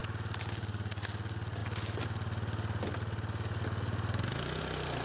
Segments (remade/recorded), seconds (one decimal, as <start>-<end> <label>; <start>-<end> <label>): 0.0-5.0 recorded